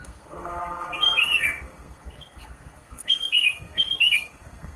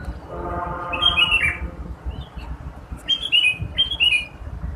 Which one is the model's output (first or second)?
first